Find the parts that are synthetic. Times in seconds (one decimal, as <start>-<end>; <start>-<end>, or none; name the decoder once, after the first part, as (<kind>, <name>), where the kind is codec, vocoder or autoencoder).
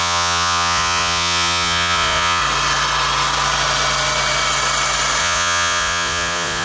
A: 0.0-2.4 (vocoder, Vocos); 5.2-6.6